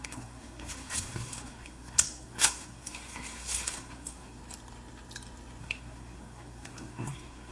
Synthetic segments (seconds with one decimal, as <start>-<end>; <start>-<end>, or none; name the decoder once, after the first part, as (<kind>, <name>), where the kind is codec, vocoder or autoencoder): 0.0-4.4 (codec, SNAC); 5.6-7.5